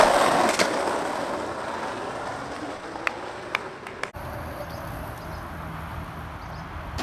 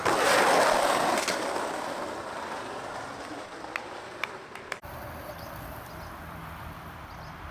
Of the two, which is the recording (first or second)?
first